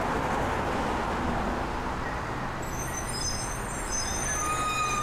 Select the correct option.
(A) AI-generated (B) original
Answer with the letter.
B